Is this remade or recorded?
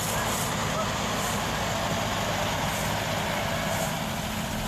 recorded